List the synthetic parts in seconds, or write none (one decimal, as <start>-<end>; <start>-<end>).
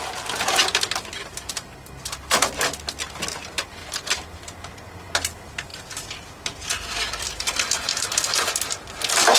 3.8-4.4